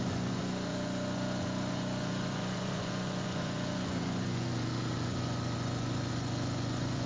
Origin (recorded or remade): remade